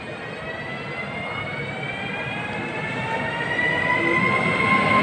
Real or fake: real